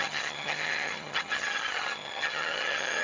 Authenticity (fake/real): fake